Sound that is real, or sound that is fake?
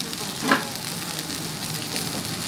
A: real